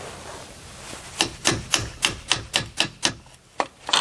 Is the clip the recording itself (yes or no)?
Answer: yes